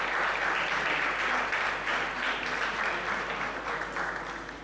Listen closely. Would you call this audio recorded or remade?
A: recorded